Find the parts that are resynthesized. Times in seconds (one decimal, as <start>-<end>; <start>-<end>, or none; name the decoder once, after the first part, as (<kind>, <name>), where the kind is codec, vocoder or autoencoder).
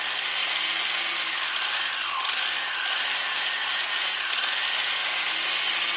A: none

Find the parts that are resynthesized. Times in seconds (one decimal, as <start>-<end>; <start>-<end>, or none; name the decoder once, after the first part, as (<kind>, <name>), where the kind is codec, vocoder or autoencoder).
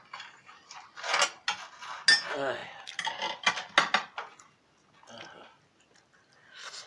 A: none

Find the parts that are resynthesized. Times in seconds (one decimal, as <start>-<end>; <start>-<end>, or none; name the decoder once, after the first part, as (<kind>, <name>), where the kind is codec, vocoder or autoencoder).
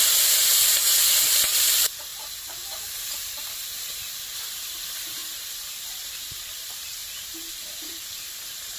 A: 0.0-8.8 (vocoder, BigVGAN v2)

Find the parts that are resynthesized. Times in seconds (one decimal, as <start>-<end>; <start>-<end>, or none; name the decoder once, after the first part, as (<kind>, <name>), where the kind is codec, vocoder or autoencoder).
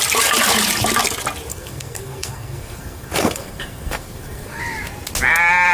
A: 1.5-4.6 (codec, SNAC)